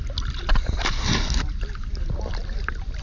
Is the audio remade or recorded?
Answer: recorded